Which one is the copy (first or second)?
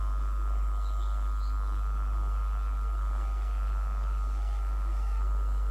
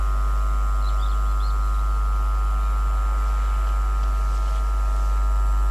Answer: first